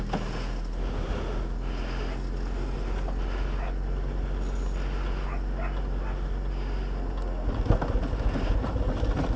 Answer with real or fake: real